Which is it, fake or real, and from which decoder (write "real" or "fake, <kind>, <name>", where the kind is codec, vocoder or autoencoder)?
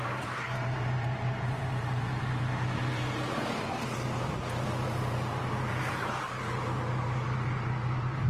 real